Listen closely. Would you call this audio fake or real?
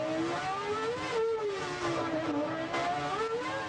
real